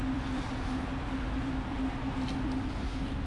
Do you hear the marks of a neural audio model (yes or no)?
no